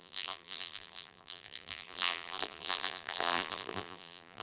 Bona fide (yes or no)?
no